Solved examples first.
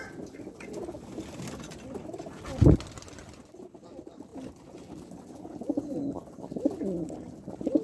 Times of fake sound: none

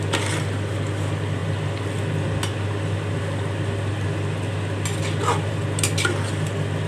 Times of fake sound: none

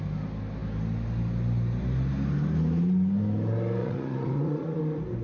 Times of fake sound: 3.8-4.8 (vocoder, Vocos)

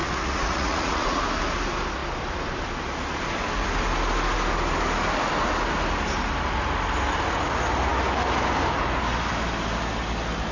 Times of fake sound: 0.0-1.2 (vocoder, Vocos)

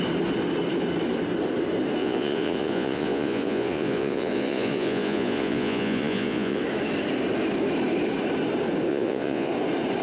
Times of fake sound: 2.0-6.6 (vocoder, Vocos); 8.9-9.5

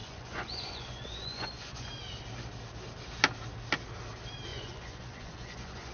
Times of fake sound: 0.0-1.9 (vocoder, Vocos); 4.5-5.9